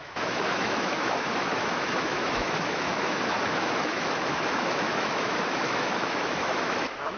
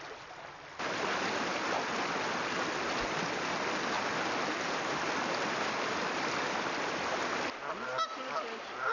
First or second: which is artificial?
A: first